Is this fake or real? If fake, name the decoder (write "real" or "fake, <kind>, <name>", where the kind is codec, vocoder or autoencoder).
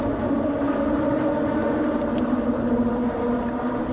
real